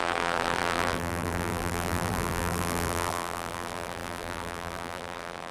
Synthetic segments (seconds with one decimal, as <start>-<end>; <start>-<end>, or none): 0.0-5.5